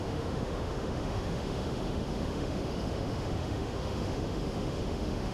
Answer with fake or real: fake